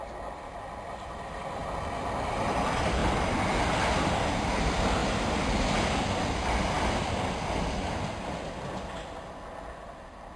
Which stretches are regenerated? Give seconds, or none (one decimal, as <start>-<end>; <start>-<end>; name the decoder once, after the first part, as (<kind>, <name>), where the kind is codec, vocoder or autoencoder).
5.0-5.6 (vocoder, BigVGAN v2)